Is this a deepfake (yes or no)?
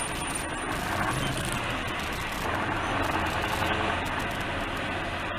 no